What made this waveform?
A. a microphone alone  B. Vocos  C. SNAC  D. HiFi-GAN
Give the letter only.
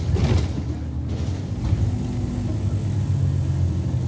A